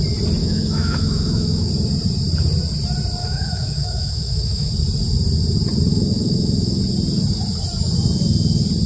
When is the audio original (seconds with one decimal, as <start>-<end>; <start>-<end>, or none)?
0.0-0.4; 1.7-3.2; 4.7-5.9; 6.8-8.9